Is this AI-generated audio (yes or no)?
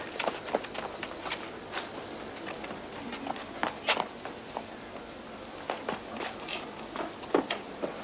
no